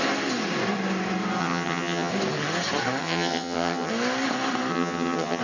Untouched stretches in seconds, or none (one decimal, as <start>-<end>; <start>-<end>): 0.0-1.4; 2.1-3.0; 3.9-4.7